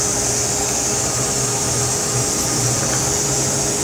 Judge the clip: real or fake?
real